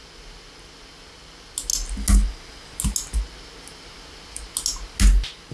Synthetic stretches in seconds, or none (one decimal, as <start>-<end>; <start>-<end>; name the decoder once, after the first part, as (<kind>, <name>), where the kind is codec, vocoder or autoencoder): none